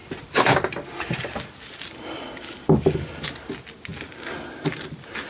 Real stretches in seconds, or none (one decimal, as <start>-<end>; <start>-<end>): 0.0-5.3